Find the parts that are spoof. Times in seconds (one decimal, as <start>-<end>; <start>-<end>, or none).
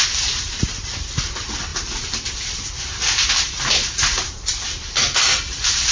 none